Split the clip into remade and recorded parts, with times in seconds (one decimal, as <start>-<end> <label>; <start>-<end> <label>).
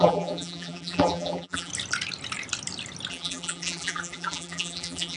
0.0-1.7 remade; 1.7-3.1 recorded; 3.1-5.2 remade